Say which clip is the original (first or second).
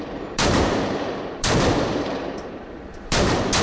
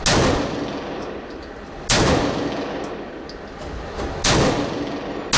second